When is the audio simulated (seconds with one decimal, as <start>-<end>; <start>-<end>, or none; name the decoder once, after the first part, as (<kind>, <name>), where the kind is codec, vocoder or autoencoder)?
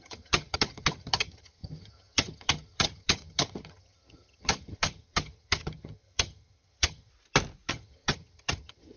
0.0-7.1 (vocoder, HiFi-GAN); 7.7-9.0